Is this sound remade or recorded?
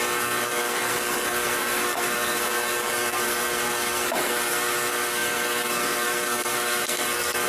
remade